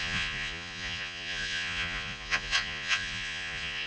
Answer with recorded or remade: remade